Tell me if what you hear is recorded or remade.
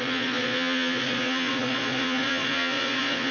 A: remade